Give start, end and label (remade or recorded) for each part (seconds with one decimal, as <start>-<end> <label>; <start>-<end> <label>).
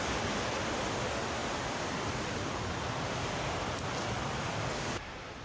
0.0-5.4 recorded